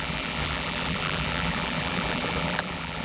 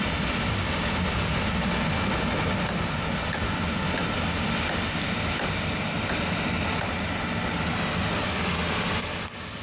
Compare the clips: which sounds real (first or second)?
second